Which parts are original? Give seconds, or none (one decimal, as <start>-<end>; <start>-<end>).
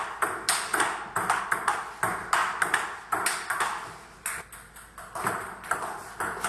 0.0-6.5